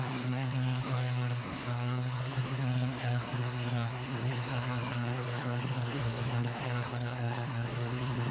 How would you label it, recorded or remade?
remade